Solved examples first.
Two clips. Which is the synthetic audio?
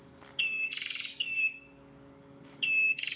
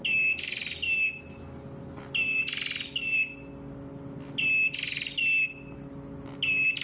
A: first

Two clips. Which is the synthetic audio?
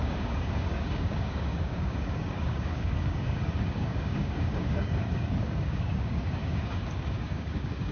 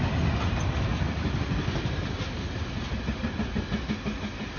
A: first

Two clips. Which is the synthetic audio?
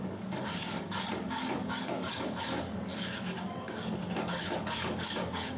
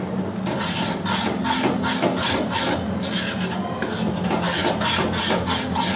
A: first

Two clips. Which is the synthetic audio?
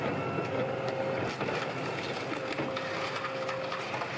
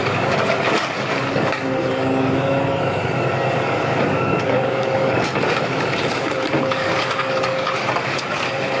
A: second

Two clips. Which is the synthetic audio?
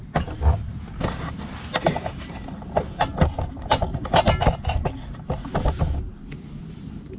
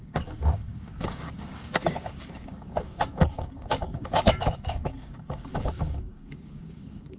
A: second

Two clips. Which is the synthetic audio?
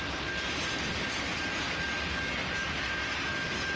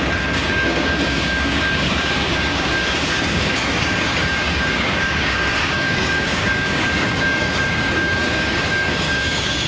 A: second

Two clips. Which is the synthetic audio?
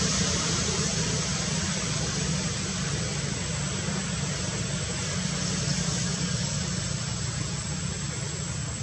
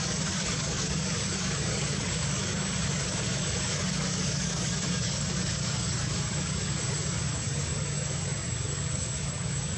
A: second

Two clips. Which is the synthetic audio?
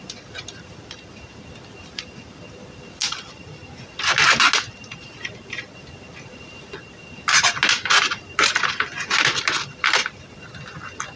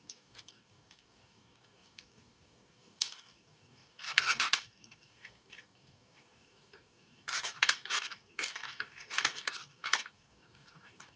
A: second